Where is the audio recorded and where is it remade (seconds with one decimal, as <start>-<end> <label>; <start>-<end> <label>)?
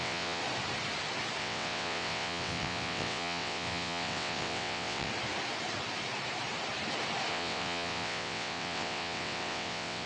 0.0-0.4 remade; 0.4-1.4 recorded; 1.4-5.1 remade; 5.1-7.3 recorded; 7.3-10.1 remade